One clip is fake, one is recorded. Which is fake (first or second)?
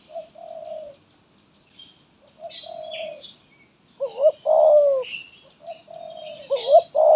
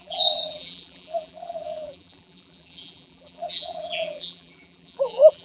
second